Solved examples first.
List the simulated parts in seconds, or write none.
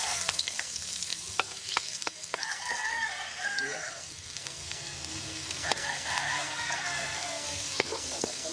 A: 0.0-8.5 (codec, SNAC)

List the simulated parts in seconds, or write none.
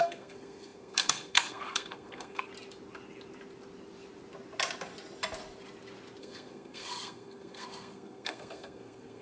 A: 0.0-2.5 (codec, SNAC); 6.2-9.2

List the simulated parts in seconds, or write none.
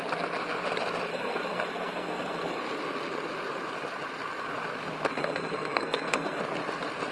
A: 1.1-2.6 (codec, SNAC); 5.1-6.4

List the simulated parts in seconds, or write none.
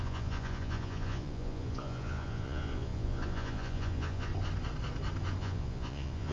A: 0.0-4.3 (vocoder, Vocos); 5.4-6.3